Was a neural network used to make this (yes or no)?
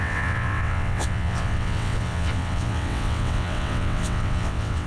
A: yes